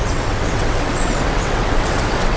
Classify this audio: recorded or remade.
remade